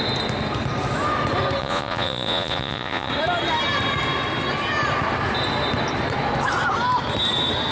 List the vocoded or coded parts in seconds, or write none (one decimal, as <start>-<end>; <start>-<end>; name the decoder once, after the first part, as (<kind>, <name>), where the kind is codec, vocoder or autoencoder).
1.6-3.1 (vocoder, Vocos)